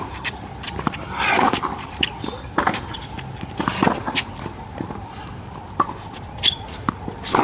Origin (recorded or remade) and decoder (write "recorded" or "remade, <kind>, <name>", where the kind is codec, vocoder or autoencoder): recorded